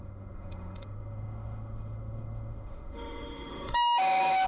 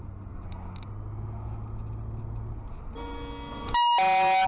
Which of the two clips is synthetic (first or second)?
first